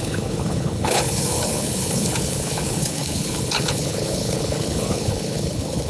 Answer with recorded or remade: remade